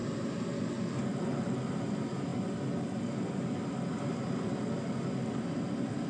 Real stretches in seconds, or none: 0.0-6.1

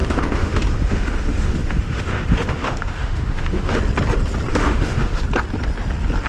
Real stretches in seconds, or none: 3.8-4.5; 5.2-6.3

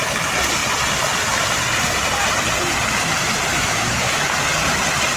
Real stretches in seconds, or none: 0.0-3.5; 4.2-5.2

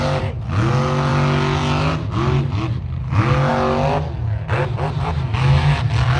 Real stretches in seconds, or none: 0.0-5.3; 5.8-6.2

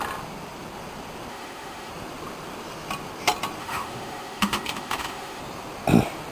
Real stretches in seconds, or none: 0.0-1.3; 1.9-3.6; 5.4-6.3

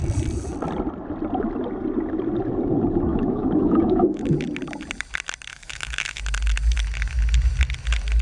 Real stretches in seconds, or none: 0.0-3.1; 4.2-5.5; 6.2-8.2

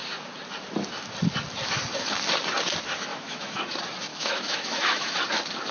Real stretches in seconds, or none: 0.0-3.1; 3.6-4.1; 5.2-5.7